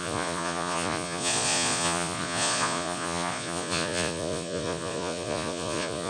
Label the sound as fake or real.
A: fake